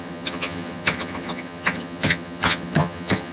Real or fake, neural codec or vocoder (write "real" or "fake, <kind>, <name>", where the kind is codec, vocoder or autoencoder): fake, vocoder, HiFi-GAN